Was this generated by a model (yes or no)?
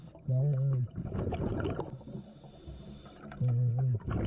no